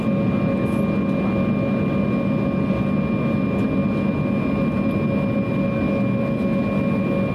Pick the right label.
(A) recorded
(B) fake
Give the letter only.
A